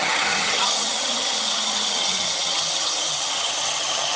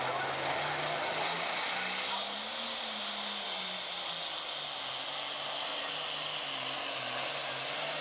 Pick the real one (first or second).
second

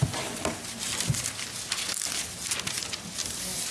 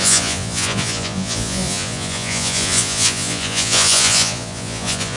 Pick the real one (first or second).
first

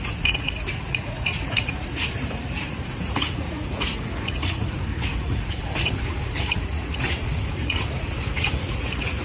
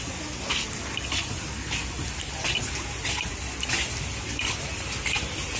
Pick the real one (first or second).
second